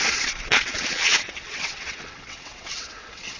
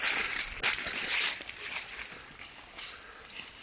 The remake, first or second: first